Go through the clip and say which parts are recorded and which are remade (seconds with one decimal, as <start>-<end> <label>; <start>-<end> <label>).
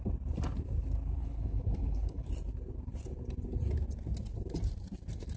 0.0-1.2 recorded; 1.2-2.3 remade; 2.3-5.4 recorded